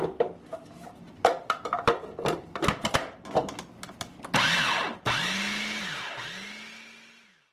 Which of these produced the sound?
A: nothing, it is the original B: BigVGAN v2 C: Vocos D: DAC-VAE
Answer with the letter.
A